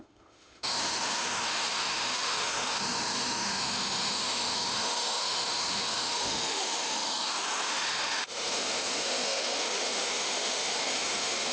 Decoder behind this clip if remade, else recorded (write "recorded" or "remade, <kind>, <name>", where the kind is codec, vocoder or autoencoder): remade, autoencoder, DAC-VAE